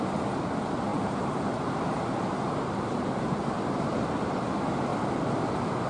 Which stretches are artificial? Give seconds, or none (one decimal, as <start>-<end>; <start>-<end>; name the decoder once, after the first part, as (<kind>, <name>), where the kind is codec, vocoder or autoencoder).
0.0-3.4 (vocoder, BigVGAN v2); 3.9-4.9; 5.4-5.9